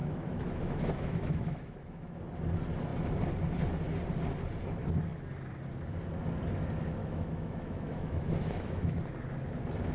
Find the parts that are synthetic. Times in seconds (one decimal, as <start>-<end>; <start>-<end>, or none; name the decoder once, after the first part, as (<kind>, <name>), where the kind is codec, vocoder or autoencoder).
0.0-2.2 (autoencoder, DAC-VAE); 7.0-9.0